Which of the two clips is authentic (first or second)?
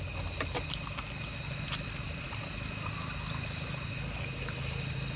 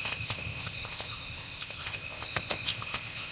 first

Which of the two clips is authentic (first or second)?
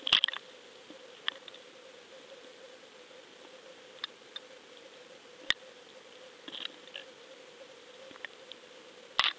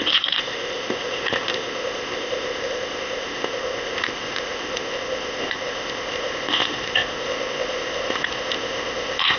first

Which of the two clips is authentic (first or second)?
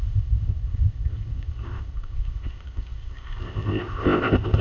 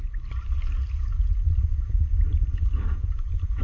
second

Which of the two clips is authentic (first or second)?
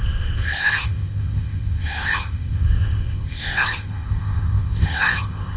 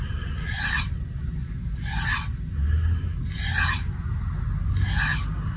second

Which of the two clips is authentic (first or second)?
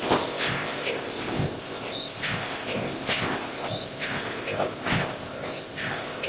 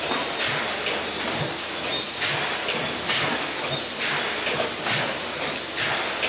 second